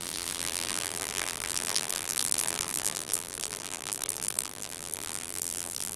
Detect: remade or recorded remade